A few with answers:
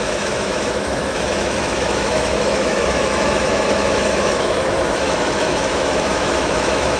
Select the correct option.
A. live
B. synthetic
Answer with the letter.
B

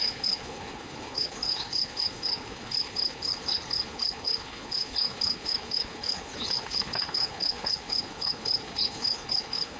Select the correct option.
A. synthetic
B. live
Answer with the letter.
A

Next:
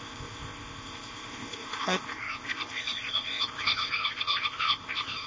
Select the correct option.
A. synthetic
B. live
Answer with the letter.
A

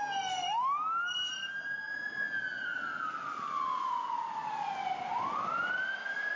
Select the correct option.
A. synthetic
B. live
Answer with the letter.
B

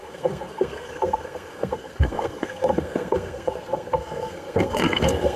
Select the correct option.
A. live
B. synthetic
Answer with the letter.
B